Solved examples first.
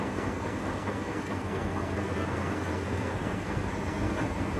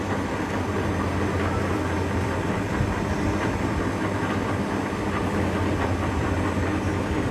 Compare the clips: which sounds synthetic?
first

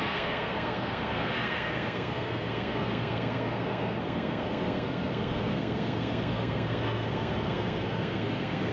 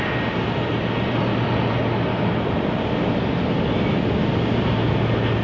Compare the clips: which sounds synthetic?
first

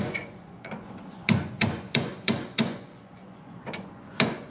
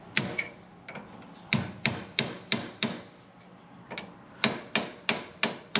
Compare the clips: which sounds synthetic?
first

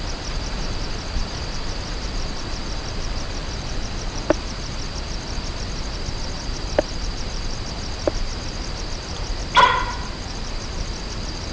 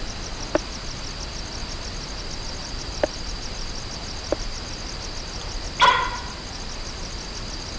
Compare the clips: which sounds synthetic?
first